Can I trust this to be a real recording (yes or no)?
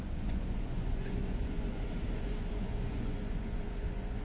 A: no